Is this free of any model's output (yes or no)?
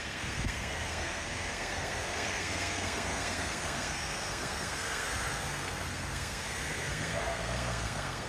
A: no